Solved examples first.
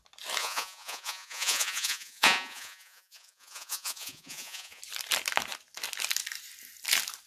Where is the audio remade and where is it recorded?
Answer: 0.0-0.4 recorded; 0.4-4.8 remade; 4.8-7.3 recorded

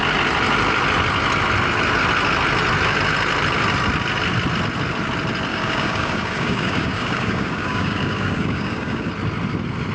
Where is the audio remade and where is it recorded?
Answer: 0.0-5.5 recorded; 5.5-9.1 remade; 9.1-9.9 recorded

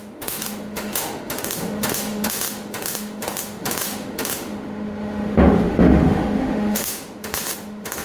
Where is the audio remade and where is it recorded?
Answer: 0.0-8.0 remade